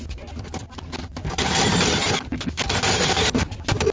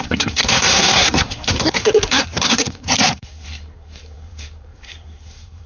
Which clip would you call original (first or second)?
first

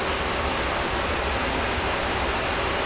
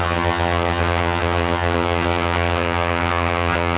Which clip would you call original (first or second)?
first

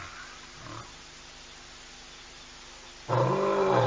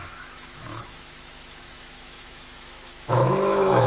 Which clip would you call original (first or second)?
first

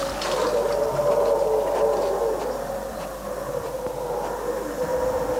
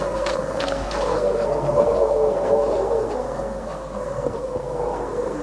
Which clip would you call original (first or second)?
first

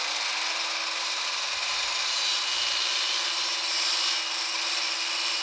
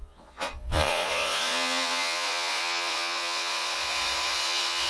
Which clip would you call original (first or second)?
first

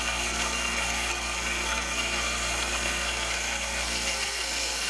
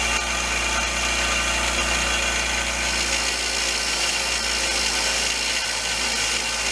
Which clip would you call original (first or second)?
second